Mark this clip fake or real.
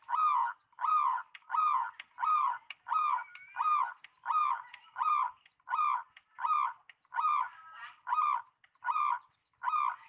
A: real